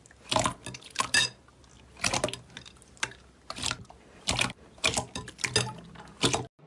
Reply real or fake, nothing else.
real